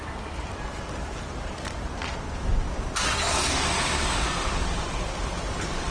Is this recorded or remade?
recorded